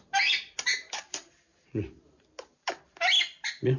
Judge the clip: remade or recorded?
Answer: recorded